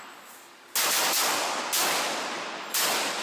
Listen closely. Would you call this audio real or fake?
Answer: real